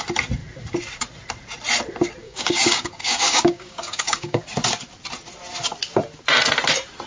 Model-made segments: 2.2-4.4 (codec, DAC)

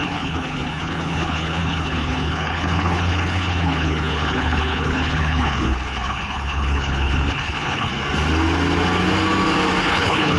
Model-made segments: 0.0-7.9 (codec, HILCodec); 9.8-10.4